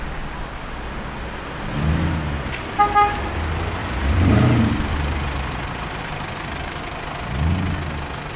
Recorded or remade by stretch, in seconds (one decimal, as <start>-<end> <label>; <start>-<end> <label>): 0.0-3.8 recorded; 3.8-6.0 remade; 6.0-8.4 recorded

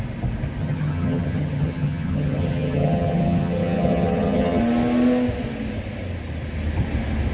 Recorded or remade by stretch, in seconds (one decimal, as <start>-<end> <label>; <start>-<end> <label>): 0.0-0.6 recorded; 0.6-4.6 remade; 4.6-7.3 recorded

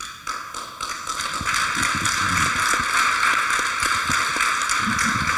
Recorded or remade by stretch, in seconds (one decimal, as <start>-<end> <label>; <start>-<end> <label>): 0.0-5.4 recorded

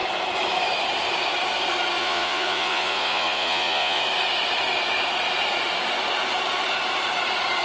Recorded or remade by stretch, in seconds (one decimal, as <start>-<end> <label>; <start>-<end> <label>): 0.0-2.0 recorded; 2.0-4.0 remade; 4.0-7.6 recorded

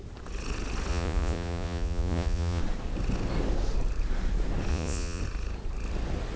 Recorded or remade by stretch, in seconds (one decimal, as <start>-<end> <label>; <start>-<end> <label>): 0.0-0.9 recorded; 0.9-2.6 remade; 2.6-4.7 recorded; 4.7-5.2 remade; 5.2-6.4 recorded

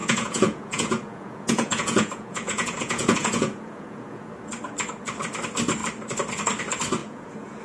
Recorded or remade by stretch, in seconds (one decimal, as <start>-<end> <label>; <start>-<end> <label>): 0.0-4.3 remade; 4.3-7.0 recorded; 7.0-7.6 remade